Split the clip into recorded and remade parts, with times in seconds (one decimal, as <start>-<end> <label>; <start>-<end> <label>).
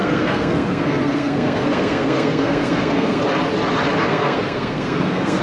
0.0-3.2 remade; 3.2-4.1 recorded; 4.1-5.4 remade